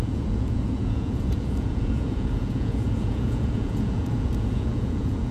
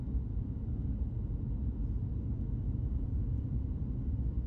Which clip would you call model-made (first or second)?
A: first